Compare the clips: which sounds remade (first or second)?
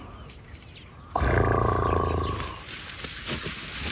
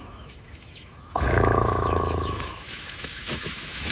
second